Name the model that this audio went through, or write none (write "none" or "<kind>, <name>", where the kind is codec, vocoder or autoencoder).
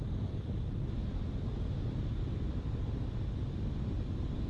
none